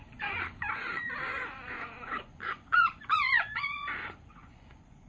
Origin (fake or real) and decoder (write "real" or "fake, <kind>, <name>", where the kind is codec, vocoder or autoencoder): fake, vocoder, Vocos